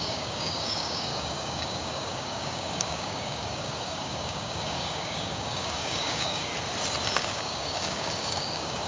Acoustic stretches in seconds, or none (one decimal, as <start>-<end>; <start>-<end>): 6.5-7.2

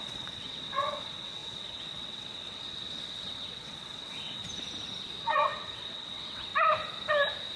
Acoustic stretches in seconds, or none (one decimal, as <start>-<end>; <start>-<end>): 4.4-5.2; 6.5-7.6

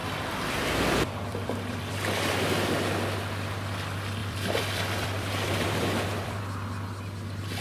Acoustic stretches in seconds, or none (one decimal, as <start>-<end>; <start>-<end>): 2.1-4.2; 6.4-7.6

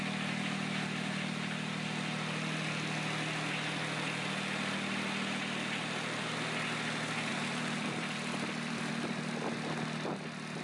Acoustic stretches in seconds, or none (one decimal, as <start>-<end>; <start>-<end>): 0.0-7.3; 8.9-10.6